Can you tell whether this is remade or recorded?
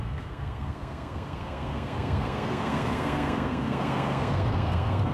remade